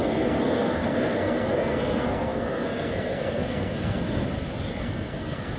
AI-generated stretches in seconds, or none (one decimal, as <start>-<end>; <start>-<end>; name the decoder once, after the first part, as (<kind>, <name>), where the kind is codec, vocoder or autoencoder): 0.0-4.2 (codec, SNAC); 4.8-5.6